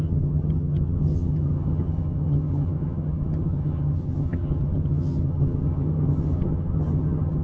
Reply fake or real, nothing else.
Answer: fake